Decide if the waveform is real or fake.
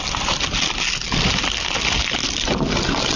real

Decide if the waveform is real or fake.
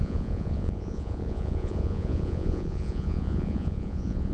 fake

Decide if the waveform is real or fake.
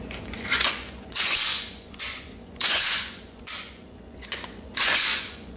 fake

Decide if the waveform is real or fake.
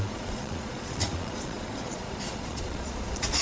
fake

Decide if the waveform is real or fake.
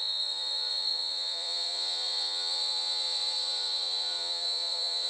fake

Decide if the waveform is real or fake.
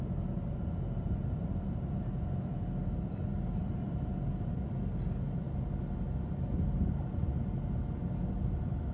real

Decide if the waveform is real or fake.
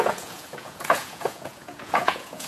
fake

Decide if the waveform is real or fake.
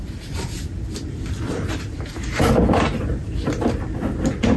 real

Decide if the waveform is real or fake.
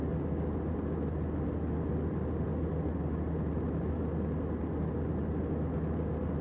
real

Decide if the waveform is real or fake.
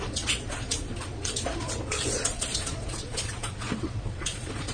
fake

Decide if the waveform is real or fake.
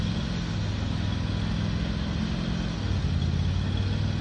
real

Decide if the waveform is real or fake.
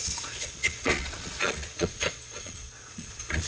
fake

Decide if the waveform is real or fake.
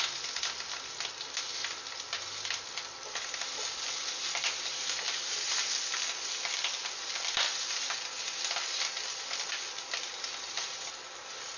real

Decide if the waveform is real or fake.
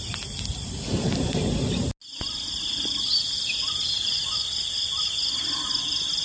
real